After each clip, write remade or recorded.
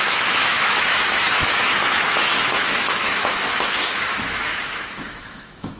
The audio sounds remade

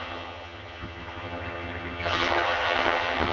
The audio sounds remade